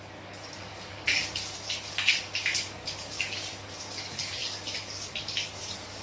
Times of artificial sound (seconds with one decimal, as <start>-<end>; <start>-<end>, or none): 0.0-6.0